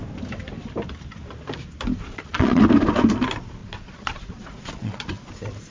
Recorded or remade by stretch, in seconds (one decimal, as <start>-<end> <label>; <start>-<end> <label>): 0.0-2.0 recorded; 2.0-2.6 remade; 2.6-3.6 recorded; 3.6-5.3 remade; 5.3-5.7 recorded